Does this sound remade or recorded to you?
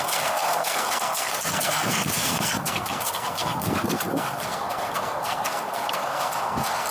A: remade